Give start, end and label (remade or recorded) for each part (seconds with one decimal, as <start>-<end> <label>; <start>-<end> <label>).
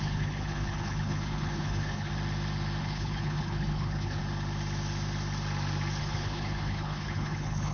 0.0-2.1 remade; 2.1-2.8 recorded; 2.8-4.2 remade; 4.2-6.0 recorded; 6.0-7.7 remade